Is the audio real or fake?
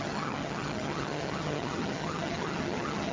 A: fake